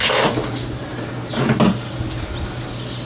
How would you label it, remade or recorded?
recorded